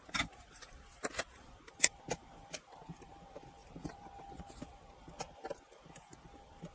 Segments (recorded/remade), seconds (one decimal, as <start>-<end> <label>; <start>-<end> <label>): 0.0-0.6 remade; 0.6-1.3 recorded; 1.3-6.7 remade